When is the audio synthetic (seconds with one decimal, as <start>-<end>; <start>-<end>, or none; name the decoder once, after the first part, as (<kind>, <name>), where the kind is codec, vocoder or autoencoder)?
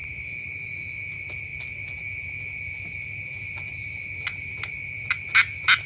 none